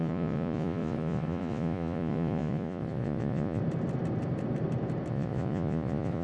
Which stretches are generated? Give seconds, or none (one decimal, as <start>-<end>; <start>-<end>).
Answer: 0.0-3.6; 5.1-6.2